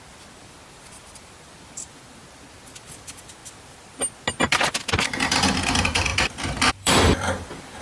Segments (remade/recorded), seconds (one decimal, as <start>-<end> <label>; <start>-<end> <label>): 0.0-3.4 remade; 3.4-5.2 recorded; 5.2-6.1 remade; 6.1-6.7 recorded; 6.7-7.8 remade